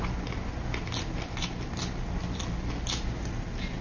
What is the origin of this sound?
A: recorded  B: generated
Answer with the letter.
A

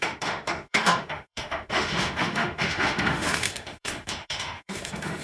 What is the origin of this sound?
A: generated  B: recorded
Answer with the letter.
A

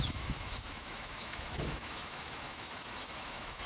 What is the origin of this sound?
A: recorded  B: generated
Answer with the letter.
B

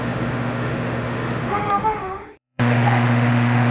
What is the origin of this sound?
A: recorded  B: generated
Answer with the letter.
B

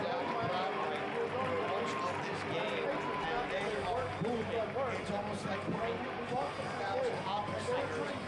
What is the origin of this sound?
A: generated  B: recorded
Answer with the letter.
B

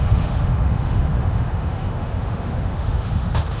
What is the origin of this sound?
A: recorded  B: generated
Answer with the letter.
B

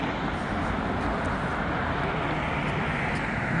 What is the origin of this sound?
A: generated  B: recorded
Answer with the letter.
B